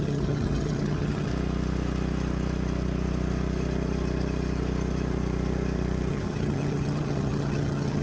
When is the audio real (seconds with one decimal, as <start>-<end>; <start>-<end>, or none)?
1.3-6.1